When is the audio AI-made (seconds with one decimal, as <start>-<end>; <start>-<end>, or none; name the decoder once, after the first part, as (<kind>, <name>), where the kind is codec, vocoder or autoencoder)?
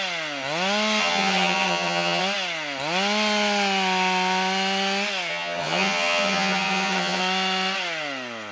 1.0-2.2 (vocoder, HiFi-GAN); 5.3-7.2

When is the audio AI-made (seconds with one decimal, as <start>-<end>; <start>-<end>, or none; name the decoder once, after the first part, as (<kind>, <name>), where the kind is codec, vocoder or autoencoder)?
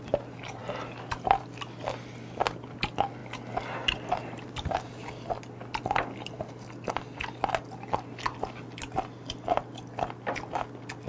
none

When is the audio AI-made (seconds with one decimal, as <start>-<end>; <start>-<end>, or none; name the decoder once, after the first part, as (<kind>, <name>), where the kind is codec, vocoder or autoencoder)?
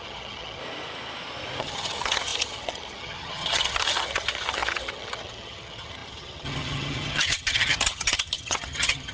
0.0-0.6 (vocoder, HiFi-GAN); 1.6-9.1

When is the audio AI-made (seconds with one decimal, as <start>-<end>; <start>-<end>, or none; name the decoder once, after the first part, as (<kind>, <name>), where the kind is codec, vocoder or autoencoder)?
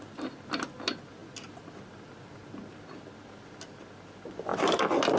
none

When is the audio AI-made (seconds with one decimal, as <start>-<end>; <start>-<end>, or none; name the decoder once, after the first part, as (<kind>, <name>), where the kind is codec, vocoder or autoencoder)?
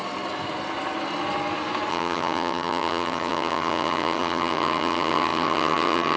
1.9-6.2 (vocoder, HiFi-GAN)